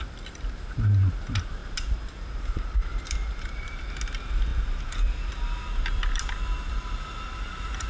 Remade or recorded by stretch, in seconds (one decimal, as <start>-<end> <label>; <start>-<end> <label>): 0.0-1.6 recorded; 1.6-3.8 remade; 3.8-7.9 recorded